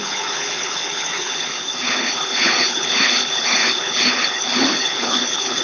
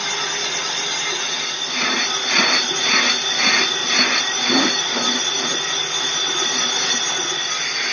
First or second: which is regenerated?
first